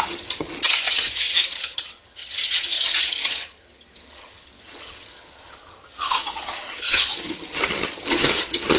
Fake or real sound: fake